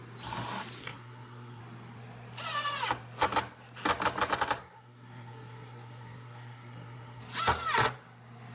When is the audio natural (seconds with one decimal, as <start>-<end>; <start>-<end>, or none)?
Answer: 0.0-0.8; 1.6-4.6; 7.2-8.5